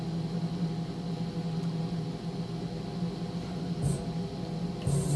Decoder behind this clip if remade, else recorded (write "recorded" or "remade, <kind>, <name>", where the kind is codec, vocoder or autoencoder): recorded